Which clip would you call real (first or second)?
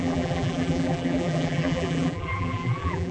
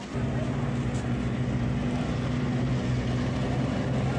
second